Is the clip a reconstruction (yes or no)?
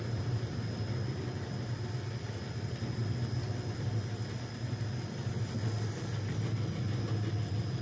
yes